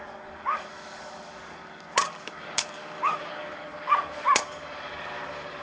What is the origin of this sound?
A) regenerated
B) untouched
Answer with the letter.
A